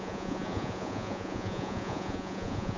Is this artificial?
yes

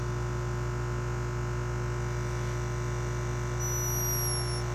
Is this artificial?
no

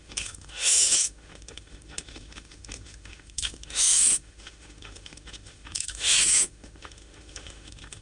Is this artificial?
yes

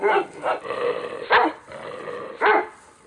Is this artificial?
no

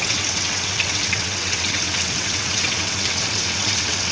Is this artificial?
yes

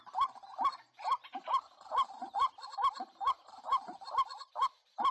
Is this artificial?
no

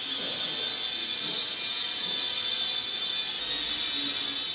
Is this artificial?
no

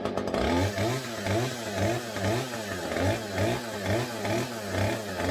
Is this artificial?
no